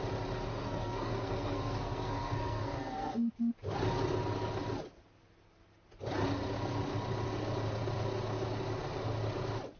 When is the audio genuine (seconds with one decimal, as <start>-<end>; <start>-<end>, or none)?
0.0-0.5; 3.4-9.8